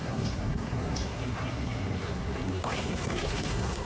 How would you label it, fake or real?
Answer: fake